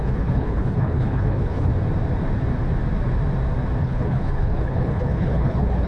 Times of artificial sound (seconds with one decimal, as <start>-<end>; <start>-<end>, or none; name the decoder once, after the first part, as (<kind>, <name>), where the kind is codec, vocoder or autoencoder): 0.0-1.7 (codec, HILCodec); 3.8-5.9